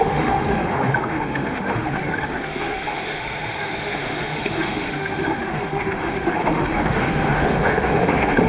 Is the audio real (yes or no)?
no